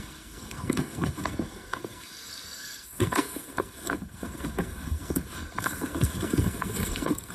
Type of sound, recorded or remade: remade